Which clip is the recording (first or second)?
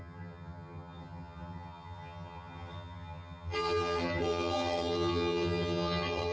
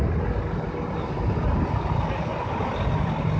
second